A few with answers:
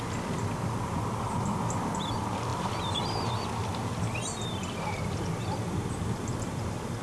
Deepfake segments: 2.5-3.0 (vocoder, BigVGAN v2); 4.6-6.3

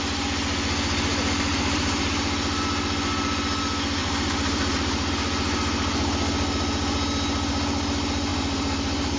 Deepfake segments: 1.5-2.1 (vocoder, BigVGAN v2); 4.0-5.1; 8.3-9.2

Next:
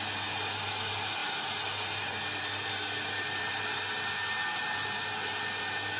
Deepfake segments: none

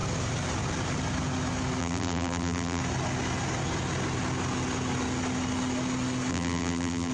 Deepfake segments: 1.8-2.8 (vocoder, BigVGAN v2); 6.3-7.1

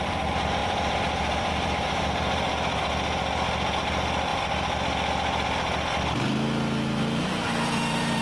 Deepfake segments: 0.0-4.3 (vocoder, BigVGAN v2); 7.0-8.2

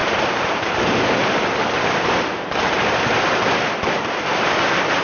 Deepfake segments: 0.0-2.7 (vocoder, BigVGAN v2)